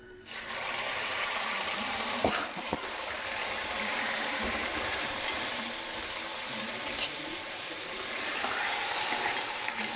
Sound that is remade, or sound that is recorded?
remade